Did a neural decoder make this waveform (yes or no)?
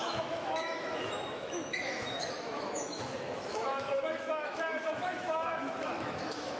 yes